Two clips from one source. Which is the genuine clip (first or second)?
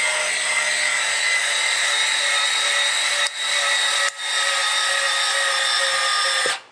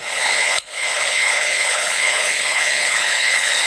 first